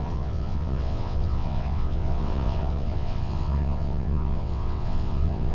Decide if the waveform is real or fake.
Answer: fake